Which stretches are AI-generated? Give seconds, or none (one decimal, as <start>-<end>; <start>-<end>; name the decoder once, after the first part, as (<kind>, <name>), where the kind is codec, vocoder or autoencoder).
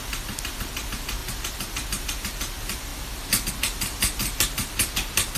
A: none